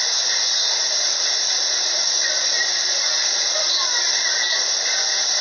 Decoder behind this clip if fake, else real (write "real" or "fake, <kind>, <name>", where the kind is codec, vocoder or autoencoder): real